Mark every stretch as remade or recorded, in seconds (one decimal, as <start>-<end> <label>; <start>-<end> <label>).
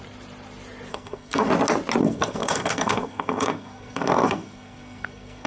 0.0-0.9 recorded; 0.9-1.5 remade; 1.5-2.0 recorded; 2.0-5.5 remade